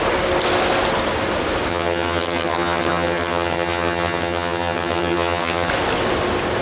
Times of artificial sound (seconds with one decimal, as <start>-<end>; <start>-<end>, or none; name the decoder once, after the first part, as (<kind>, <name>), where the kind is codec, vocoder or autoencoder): 1.7-5.7 (vocoder, HiFi-GAN)